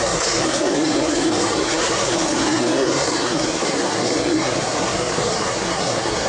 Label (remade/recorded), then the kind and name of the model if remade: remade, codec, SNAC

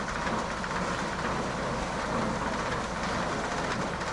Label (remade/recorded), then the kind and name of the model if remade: recorded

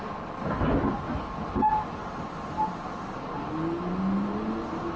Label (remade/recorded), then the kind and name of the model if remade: recorded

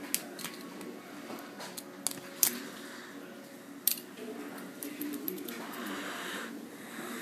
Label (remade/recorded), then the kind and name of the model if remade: recorded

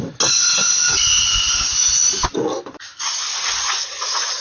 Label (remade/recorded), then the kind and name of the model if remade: recorded